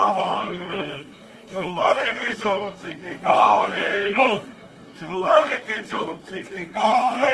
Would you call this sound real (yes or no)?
no